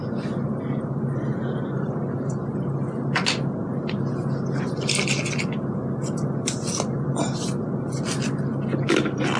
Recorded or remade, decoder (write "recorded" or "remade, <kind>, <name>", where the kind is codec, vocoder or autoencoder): recorded